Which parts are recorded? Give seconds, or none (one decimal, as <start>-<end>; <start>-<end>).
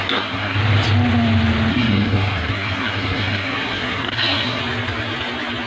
0.6-1.7; 4.6-5.7